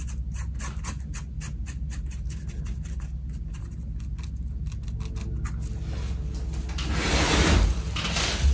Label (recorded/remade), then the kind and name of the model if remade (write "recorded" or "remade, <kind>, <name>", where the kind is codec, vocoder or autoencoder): recorded